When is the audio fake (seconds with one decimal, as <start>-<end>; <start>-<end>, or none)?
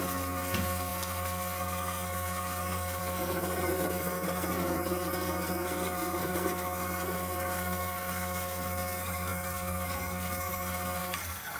0.0-11.6